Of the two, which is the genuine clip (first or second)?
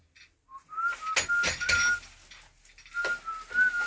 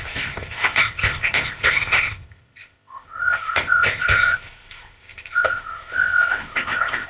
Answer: first